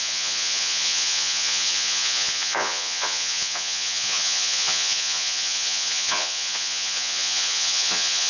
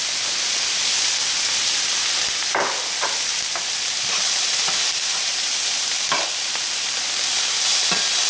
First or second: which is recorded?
second